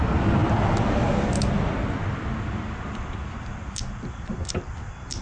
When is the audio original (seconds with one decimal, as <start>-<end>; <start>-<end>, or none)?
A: 0.0-5.2